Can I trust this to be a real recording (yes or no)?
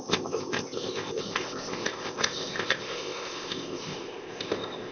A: no